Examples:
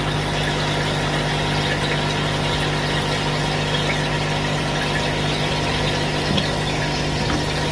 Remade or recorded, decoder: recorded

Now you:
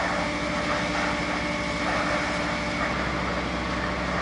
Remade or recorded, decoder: recorded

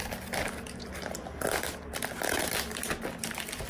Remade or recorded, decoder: recorded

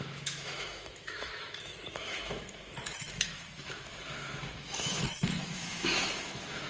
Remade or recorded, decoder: remade, autoencoder, DAC-VAE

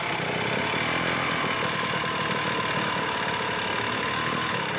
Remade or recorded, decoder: recorded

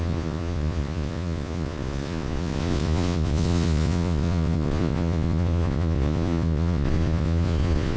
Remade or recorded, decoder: remade, vocoder, Vocos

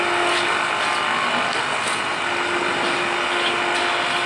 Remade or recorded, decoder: recorded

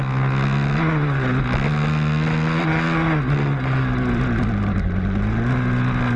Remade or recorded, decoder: recorded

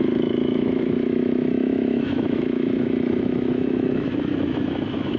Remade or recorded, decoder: remade, autoencoder, DAC-VAE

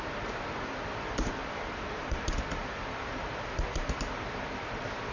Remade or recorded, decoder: remade, vocoder, BigVGAN v2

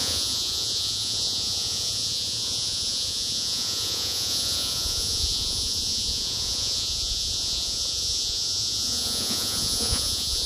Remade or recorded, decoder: remade, vocoder, Vocos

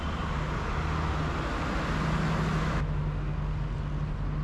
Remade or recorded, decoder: recorded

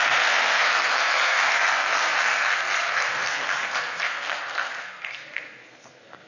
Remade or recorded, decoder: remade, codec, SNAC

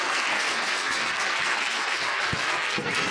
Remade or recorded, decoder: remade, codec, SNAC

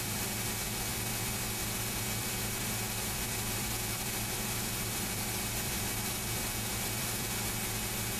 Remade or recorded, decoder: remade, vocoder, BigVGAN v2